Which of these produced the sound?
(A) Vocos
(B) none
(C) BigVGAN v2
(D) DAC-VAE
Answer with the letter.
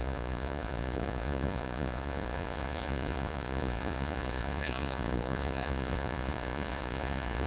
A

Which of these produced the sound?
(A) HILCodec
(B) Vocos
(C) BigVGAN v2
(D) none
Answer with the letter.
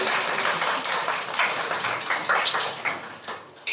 C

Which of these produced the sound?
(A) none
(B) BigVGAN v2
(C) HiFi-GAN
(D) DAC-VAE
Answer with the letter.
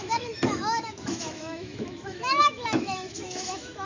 D